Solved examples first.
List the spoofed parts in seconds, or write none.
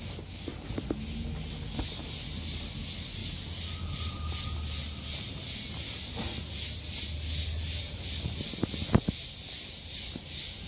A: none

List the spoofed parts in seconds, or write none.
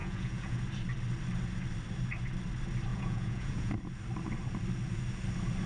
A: 0.0-0.6 (vocoder, Vocos); 2.9-3.7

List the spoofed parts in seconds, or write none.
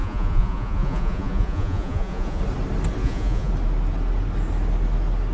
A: 0.0-2.4 (vocoder, Vocos); 3.0-3.5